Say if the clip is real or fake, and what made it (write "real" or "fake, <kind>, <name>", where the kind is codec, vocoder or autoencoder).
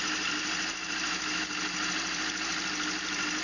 real